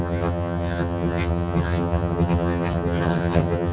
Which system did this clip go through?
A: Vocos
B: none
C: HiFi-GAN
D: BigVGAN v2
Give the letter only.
C